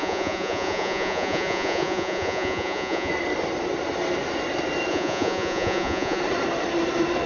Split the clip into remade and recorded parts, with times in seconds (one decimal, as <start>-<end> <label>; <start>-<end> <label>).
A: 0.0-3.1 remade; 3.1-4.9 recorded; 4.9-6.2 remade; 6.2-7.3 recorded